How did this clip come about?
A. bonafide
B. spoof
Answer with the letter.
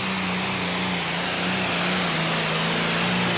A